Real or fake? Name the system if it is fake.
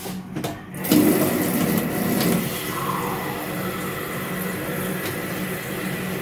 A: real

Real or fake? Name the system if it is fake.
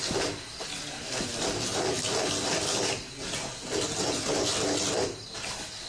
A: real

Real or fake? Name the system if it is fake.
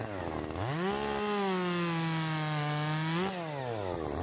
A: real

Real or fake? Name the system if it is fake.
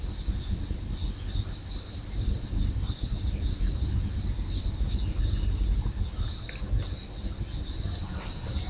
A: real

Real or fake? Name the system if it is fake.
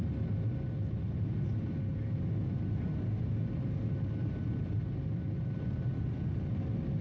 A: real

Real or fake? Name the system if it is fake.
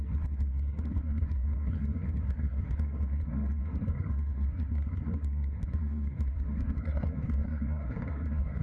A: fake, codec, SNAC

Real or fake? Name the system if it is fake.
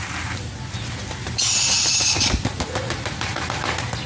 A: real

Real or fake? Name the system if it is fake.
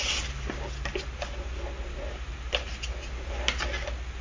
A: real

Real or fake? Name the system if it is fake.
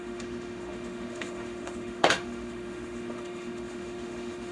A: fake, autoencoder, DAC-VAE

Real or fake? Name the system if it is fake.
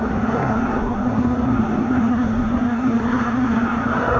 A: fake, codec, SNAC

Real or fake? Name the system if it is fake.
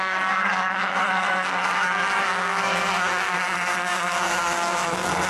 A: fake, codec, SNAC